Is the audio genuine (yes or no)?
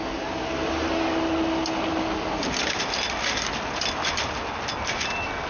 yes